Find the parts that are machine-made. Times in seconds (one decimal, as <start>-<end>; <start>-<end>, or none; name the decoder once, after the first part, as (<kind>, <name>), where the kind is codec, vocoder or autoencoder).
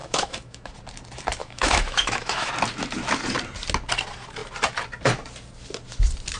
0.0-0.7 (autoencoder, DAC-VAE); 1.4-2.5